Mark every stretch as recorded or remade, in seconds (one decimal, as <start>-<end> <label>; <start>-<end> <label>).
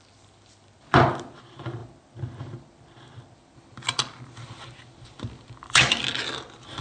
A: 0.0-6.8 remade